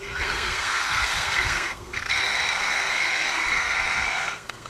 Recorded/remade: remade